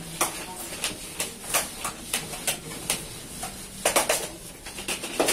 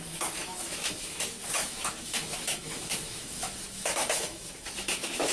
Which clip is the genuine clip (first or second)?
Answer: first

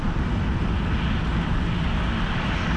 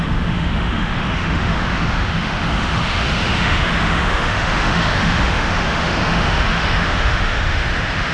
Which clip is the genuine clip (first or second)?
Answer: first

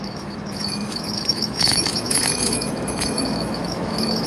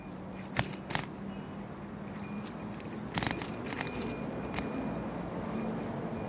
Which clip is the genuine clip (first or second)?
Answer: second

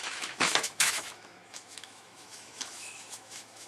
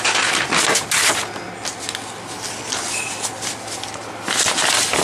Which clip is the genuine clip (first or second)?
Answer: second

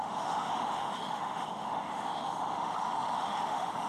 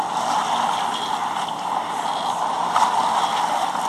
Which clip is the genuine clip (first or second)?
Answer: second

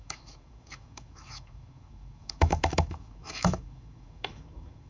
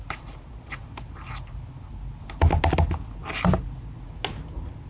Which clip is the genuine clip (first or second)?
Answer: second